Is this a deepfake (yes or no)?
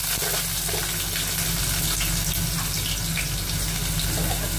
no